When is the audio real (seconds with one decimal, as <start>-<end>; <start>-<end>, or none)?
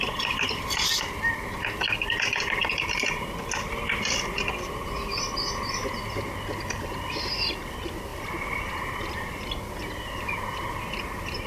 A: 0.0-11.5